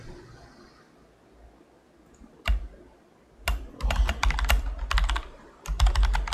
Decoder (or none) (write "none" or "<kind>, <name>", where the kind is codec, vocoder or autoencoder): none